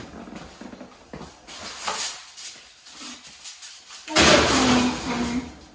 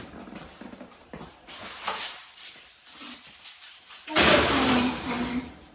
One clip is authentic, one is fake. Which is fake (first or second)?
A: second